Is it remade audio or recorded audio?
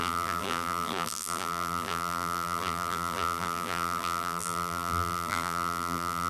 remade